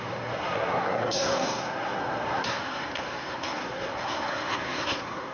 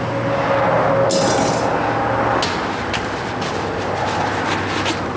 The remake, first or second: first